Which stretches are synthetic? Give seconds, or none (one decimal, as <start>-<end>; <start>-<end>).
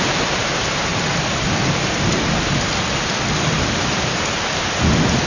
0.9-4.1